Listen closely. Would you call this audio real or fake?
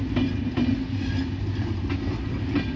real